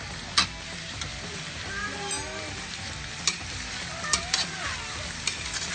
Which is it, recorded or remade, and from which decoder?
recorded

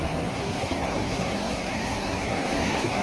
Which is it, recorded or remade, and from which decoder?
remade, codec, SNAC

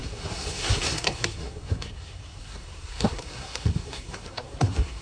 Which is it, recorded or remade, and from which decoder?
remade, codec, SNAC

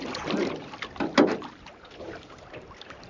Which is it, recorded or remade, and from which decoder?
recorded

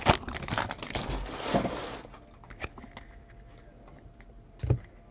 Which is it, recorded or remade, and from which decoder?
recorded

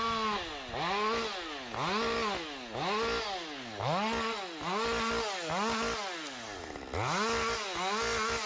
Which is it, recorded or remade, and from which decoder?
recorded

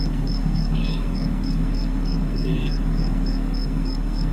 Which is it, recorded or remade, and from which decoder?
remade, codec, SNAC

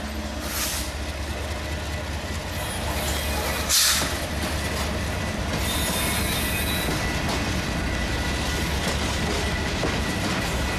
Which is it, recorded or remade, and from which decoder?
recorded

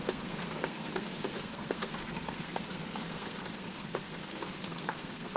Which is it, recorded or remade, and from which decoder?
remade, codec, SNAC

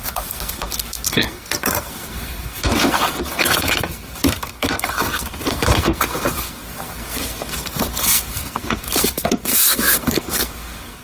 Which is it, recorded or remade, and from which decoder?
remade, codec, SNAC